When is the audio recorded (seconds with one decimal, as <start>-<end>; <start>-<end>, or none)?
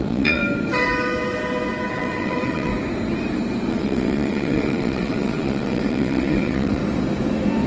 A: 0.4-1.9; 2.7-3.7; 6.8-7.7